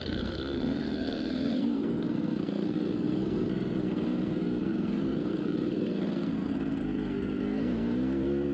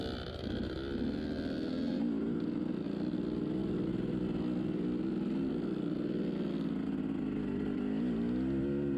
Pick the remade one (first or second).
first